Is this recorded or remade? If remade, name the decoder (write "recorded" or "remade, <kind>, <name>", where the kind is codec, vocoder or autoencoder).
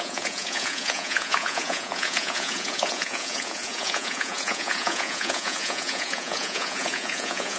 remade, vocoder, Vocos